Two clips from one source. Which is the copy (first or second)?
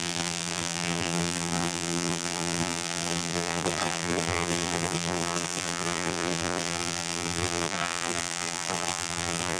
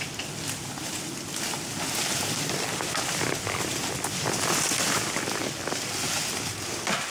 first